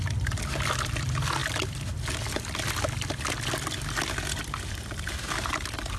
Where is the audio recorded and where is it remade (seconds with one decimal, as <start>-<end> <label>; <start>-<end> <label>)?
0.0-6.0 recorded